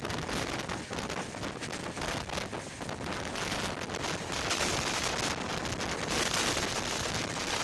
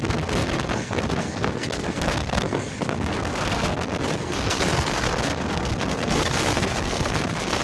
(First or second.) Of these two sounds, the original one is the first